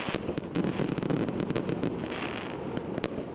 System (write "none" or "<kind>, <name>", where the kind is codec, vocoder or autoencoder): none